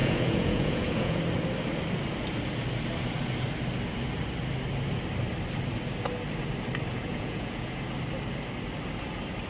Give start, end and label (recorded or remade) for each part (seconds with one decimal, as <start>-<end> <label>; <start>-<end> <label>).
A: 0.0-1.2 remade; 1.2-7.0 recorded; 7.0-7.8 remade; 7.8-9.5 recorded